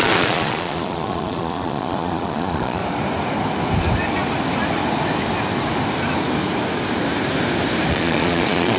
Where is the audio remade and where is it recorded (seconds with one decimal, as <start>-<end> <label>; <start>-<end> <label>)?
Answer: 0.0-2.8 remade; 2.8-7.9 recorded; 7.9-8.8 remade